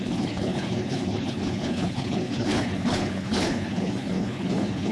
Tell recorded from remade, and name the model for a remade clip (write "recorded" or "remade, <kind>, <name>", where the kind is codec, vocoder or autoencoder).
remade, codec, HILCodec